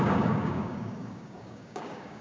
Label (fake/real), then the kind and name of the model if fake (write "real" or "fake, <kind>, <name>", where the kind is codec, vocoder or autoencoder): fake, codec, DAC